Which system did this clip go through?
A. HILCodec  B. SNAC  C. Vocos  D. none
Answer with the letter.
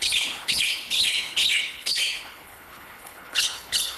A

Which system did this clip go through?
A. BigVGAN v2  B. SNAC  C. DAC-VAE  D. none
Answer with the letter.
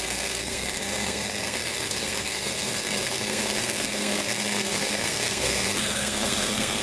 B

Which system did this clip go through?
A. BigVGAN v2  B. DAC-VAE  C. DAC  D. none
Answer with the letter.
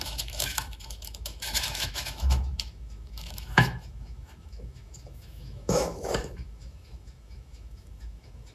B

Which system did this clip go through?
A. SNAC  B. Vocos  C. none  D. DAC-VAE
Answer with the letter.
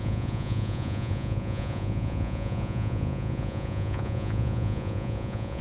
B